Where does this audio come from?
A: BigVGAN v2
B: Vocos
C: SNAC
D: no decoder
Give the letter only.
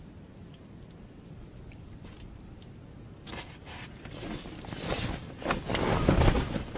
D